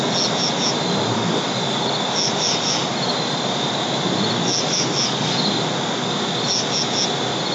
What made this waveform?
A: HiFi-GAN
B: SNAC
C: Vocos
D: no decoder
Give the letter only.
D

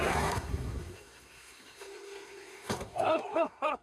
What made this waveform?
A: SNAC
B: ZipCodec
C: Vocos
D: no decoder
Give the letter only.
A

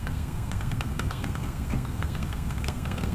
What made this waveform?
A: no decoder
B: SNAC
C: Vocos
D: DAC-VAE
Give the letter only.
B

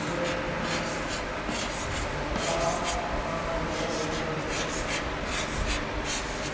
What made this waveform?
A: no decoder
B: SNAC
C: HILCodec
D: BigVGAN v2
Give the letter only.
A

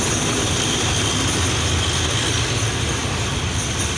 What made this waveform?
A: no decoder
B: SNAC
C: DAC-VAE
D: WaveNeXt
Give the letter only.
A